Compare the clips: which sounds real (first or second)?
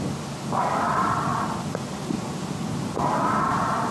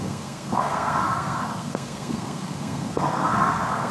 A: first